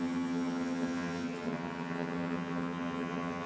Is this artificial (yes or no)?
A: yes